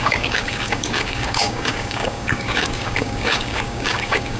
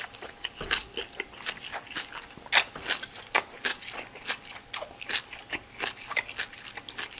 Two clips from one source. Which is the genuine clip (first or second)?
second